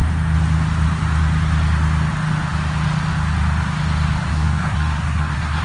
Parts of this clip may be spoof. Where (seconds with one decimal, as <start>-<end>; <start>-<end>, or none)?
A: 4.3-5.6

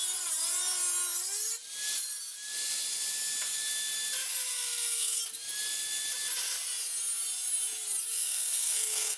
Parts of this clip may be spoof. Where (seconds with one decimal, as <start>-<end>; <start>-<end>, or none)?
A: 4.5-5.2; 8.1-9.2

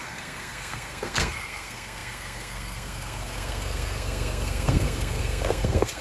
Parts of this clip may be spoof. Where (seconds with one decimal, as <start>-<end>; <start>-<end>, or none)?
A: 0.0-6.0

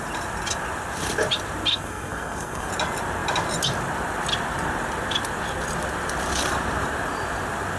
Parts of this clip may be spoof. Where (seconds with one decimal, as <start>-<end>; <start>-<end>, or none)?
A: 1.7-2.7